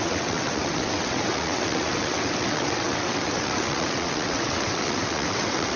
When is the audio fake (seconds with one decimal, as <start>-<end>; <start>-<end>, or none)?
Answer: 0.0-5.8